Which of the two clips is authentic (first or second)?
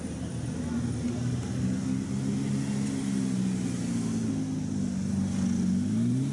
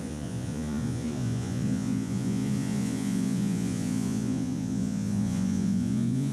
first